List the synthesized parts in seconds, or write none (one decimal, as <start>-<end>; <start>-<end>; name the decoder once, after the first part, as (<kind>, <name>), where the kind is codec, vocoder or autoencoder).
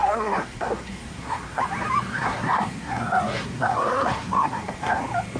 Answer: 0.0-1.6 (codec, SNAC); 2.1-5.0